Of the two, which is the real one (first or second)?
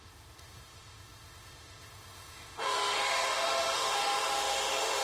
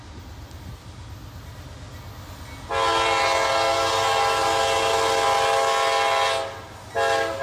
second